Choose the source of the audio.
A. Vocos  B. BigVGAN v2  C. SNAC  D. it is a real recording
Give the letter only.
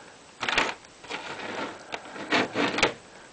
D